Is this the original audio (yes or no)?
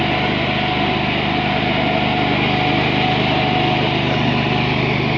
yes